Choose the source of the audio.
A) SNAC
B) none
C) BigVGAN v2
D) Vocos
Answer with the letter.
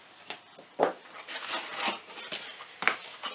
B